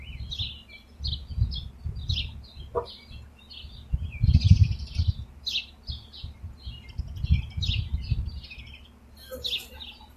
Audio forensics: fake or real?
real